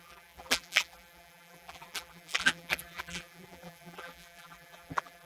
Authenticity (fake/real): fake